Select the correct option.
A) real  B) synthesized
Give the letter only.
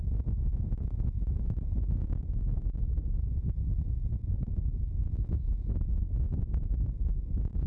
A